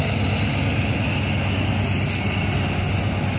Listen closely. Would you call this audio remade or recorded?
recorded